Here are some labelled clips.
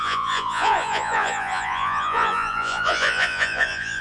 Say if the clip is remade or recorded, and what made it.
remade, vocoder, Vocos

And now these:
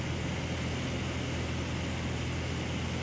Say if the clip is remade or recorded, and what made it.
recorded